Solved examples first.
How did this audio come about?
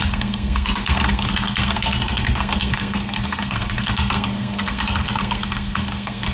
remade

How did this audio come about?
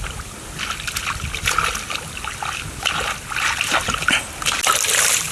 recorded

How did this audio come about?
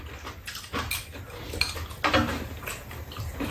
recorded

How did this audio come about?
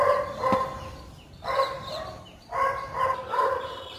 recorded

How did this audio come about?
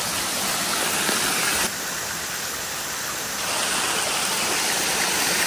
recorded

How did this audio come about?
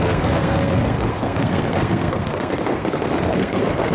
remade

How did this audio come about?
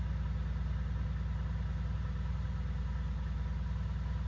recorded